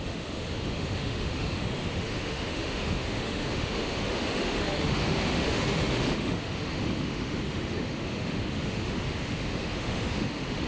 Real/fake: fake